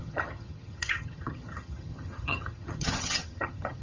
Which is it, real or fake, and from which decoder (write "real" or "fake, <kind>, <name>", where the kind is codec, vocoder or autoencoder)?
fake, vocoder, HiFi-GAN